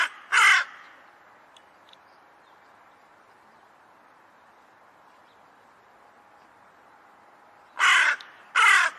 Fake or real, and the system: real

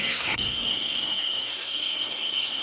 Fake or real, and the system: fake, codec, SNAC